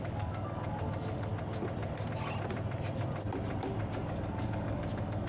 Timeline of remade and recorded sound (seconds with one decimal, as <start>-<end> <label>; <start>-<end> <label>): 0.0-1.3 remade; 1.3-4.0 recorded; 4.0-5.3 remade